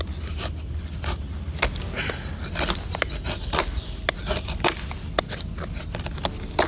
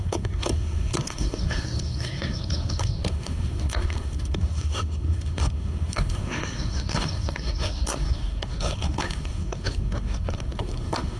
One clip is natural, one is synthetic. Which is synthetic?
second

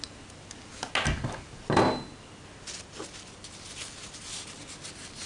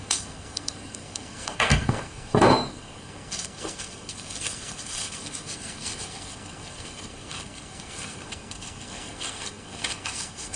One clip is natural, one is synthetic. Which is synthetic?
second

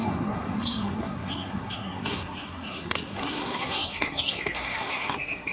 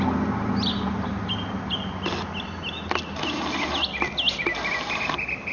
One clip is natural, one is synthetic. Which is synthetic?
first